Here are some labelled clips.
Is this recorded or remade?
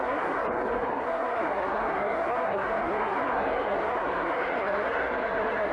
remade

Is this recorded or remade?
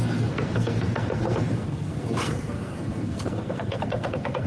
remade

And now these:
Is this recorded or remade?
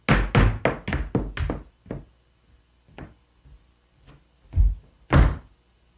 recorded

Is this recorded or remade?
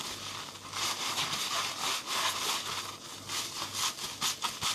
recorded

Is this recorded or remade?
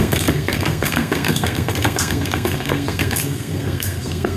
remade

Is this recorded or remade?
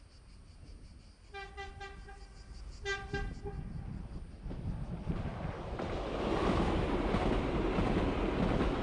recorded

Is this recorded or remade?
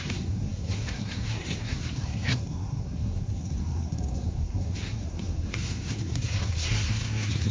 remade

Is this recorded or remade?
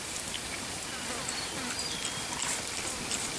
recorded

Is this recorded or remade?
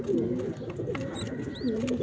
recorded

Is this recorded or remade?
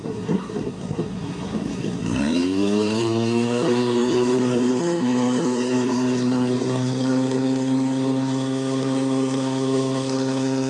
remade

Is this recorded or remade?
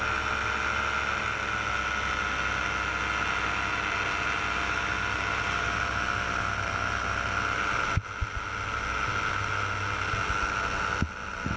recorded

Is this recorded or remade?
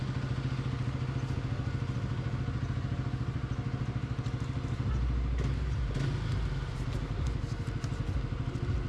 recorded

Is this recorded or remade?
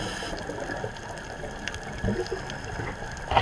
recorded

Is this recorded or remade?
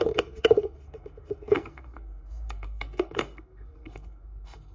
remade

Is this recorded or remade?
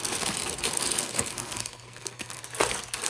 remade